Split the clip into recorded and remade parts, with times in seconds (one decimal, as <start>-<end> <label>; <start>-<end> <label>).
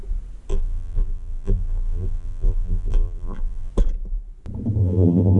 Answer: 0.0-0.5 recorded; 0.5-3.7 remade; 3.7-4.8 recorded; 4.8-5.4 remade